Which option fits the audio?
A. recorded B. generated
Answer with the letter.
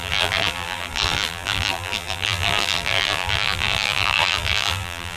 B